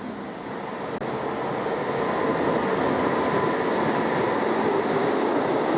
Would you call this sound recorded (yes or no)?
yes